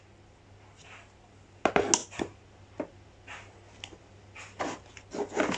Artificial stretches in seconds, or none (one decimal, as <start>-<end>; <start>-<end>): none